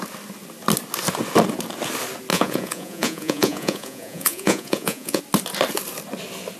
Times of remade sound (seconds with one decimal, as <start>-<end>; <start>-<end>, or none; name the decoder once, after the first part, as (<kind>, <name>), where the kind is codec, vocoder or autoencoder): 2.3-5.2 (vocoder, Vocos)